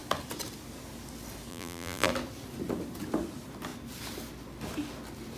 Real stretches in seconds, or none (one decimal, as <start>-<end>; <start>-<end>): 0.0-1.5; 2.1-5.4